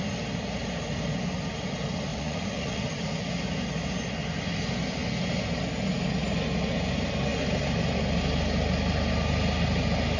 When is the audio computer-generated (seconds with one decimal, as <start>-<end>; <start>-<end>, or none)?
2.1-2.8